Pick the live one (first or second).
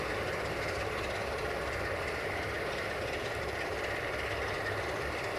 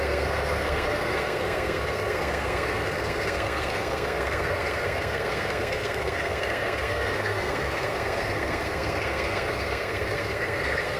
first